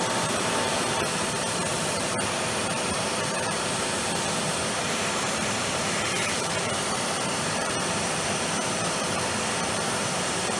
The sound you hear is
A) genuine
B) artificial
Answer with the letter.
B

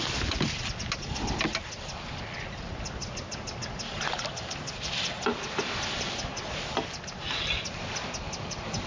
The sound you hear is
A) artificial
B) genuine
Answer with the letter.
B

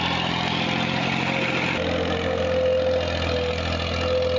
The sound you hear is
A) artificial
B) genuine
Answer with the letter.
B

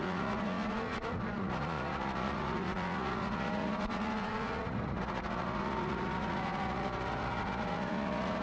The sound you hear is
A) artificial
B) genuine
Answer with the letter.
A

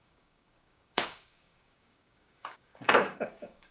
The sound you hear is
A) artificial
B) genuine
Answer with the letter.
A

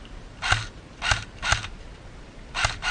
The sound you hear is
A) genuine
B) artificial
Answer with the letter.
A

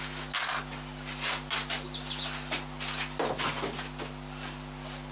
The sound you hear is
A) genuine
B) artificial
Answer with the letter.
A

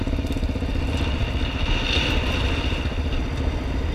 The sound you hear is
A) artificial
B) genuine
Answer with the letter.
B